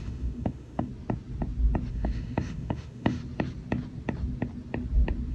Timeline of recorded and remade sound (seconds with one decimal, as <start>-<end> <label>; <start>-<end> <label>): 0.0-0.9 remade; 0.9-1.9 recorded; 1.9-3.2 remade; 3.2-5.3 recorded